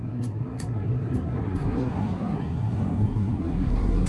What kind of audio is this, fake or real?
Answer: fake